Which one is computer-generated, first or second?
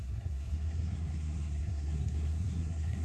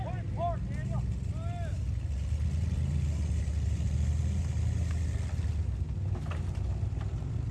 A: first